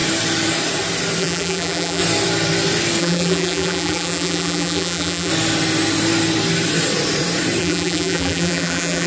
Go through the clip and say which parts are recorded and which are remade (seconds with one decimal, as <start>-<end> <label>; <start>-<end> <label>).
0.0-1.2 recorded; 1.2-2.0 remade; 2.0-3.0 recorded; 3.0-5.3 remade; 5.3-7.6 recorded; 7.6-9.1 remade